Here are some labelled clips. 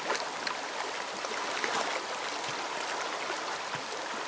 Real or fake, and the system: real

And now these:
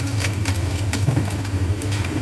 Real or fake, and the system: fake, codec, DAC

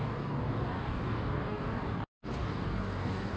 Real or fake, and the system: fake, codec, DAC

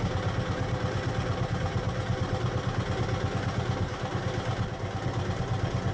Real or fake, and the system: real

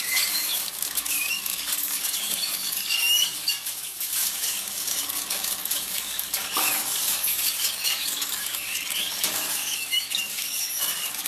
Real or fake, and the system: fake, codec, DAC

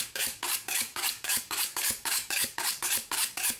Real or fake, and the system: fake, codec, DAC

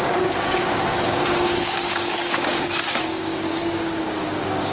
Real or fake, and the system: fake, codec, DAC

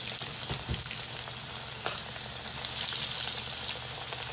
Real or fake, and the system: real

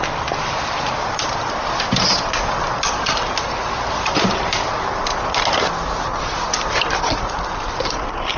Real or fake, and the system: real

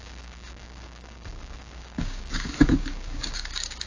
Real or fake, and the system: fake, codec, DAC